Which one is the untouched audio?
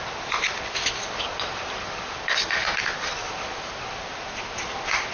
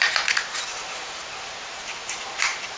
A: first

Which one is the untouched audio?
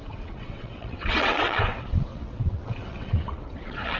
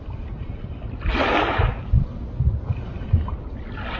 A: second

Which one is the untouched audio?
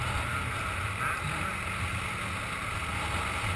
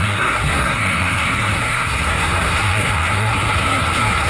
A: first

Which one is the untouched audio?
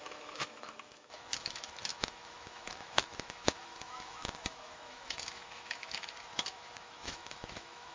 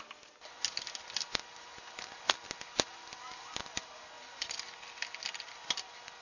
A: second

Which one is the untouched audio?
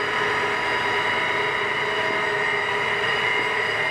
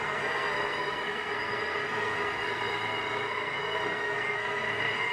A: first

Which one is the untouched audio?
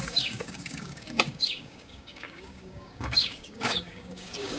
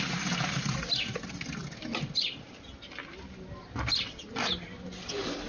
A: second